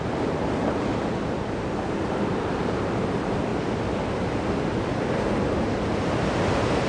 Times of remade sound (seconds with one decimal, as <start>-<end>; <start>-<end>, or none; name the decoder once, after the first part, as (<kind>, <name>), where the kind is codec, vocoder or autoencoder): 0.0-0.9 (vocoder, BigVGAN v2); 1.6-3.5; 6.0-6.9